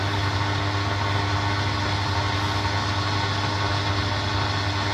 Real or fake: real